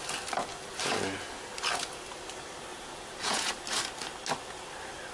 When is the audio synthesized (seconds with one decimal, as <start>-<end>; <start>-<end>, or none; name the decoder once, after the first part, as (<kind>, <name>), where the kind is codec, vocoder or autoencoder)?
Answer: 2.7-3.6 (vocoder, Vocos)